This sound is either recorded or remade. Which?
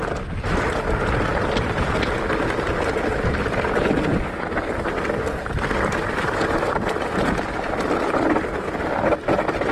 recorded